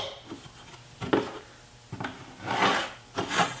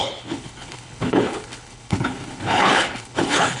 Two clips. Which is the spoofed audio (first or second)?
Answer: second